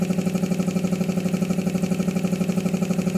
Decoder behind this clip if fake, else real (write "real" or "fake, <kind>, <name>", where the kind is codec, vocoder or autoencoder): real